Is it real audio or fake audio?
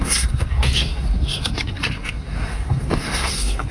fake